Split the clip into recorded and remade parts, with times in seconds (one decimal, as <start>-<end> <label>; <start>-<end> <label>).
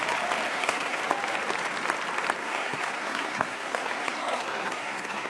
0.0-0.5 recorded; 0.5-1.0 remade; 1.0-2.4 recorded; 2.4-5.3 remade